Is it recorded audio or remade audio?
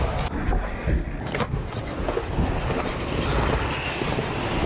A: recorded